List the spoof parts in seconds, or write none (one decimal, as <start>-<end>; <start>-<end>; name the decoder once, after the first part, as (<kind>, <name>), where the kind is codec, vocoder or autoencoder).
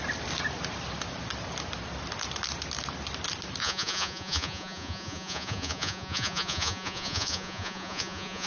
3.6-8.5 (vocoder, Vocos)